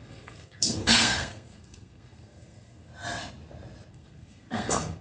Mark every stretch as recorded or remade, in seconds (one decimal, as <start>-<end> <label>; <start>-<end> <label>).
0.0-2.9 remade; 2.9-3.9 recorded; 3.9-5.0 remade